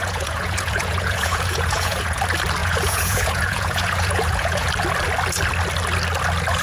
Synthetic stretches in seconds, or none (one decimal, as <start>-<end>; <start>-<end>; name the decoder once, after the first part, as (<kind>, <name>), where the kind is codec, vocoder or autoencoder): 0.0-2.2 (vocoder, Vocos); 2.6-4.7